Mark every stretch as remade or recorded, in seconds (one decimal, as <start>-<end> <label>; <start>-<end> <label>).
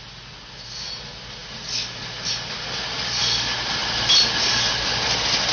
0.0-5.5 recorded